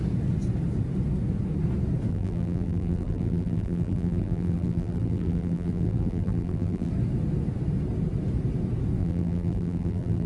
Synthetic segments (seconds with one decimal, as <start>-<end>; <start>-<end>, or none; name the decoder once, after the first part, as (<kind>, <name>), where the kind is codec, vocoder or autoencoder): 2.1-6.9 (vocoder, BigVGAN v2); 9.0-10.3

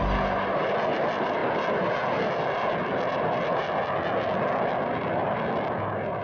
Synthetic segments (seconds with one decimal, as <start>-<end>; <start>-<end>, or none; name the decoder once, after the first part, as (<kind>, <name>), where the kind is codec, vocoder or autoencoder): none

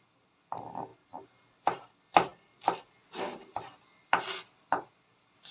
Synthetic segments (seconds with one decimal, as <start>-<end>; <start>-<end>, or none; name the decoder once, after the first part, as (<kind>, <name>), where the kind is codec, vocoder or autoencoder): 0.9-1.9 (vocoder, BigVGAN v2)

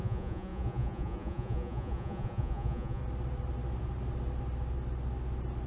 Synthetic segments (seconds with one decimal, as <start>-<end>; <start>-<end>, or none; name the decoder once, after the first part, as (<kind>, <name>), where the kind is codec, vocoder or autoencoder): 0.0-3.0 (vocoder, Vocos)

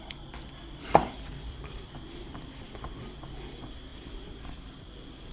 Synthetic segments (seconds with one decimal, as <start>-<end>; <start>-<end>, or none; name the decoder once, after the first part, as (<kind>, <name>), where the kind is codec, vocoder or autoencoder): 1.3-3.3 (vocoder, BigVGAN v2); 3.9-4.8